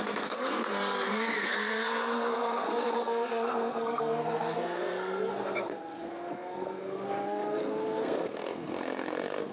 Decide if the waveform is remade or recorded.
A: remade